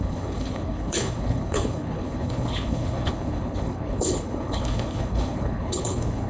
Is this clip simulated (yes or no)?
yes